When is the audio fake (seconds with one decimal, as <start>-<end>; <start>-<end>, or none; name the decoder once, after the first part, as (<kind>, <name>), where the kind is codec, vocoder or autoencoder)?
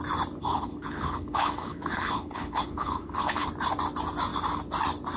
0.4-3.5 (codec, HILCodec)